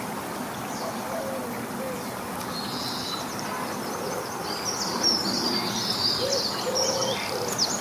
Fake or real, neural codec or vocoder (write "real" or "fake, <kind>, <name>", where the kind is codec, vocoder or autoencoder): real